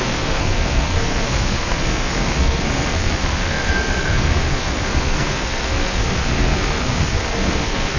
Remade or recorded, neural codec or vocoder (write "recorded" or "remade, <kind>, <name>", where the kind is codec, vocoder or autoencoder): remade, codec, SNAC